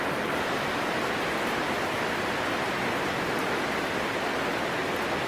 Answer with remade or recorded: recorded